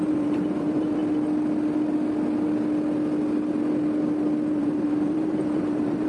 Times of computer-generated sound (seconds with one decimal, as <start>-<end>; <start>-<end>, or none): 0.0-1.0; 4.6-6.1